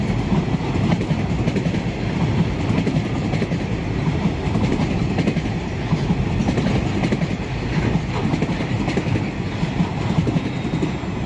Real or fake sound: real